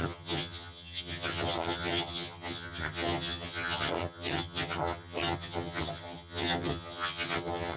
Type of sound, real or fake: fake